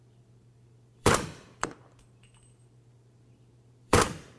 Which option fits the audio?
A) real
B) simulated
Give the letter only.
B